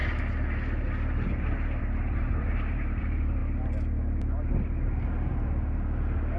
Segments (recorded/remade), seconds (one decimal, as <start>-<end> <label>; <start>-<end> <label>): 0.0-1.8 recorded; 1.8-3.4 remade; 3.4-6.4 recorded